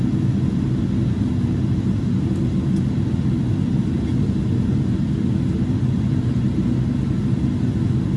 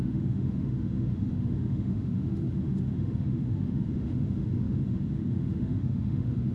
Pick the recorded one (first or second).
first